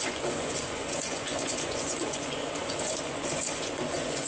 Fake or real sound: fake